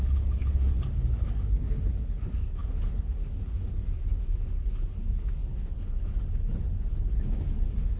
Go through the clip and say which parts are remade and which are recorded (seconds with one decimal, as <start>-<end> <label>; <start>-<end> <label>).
0.0-8.0 remade